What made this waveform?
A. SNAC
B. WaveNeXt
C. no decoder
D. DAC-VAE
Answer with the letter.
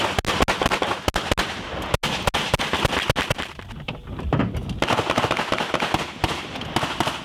C